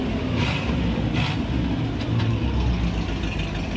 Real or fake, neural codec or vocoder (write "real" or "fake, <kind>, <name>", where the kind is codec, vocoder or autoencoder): real